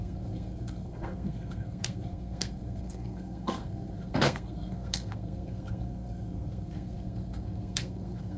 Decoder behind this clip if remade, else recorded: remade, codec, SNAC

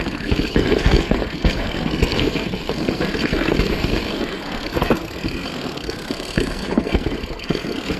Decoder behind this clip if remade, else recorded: remade, codec, SNAC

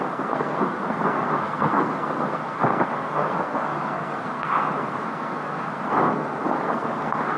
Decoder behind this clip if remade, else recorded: remade, codec, SNAC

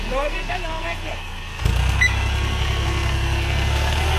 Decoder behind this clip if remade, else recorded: remade, codec, SNAC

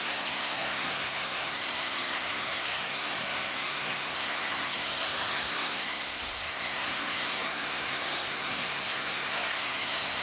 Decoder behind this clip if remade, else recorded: remade, codec, SNAC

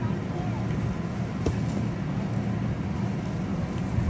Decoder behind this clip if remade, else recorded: recorded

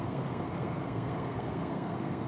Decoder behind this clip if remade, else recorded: remade, codec, SNAC